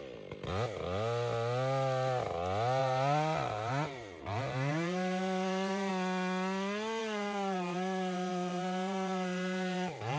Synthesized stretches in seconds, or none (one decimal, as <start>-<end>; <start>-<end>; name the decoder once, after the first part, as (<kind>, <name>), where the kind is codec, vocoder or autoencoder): 2.8-5.9 (vocoder, BigVGAN v2); 7.0-10.2